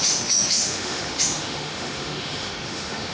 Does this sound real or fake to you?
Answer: fake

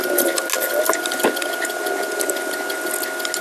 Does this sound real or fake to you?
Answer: real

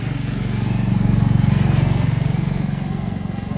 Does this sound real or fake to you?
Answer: fake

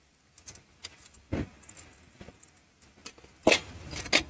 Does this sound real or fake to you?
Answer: real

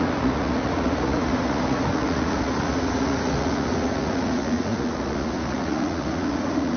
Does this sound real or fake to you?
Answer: fake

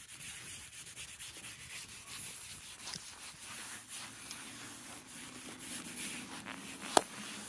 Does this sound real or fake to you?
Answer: real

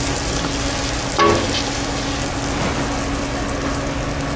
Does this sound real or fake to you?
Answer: real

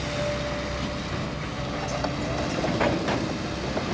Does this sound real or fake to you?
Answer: real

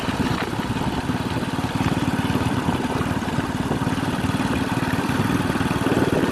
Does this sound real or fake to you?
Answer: fake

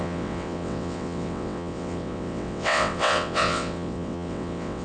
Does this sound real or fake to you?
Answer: fake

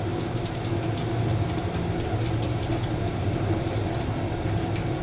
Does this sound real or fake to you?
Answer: real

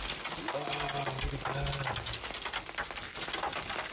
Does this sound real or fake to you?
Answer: real